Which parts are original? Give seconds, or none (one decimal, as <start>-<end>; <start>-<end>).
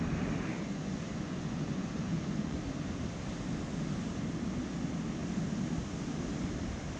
0.0-0.5; 2.6-7.0